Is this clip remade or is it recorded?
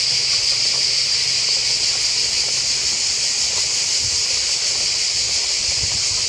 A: recorded